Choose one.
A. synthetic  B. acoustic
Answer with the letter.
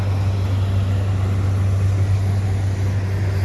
B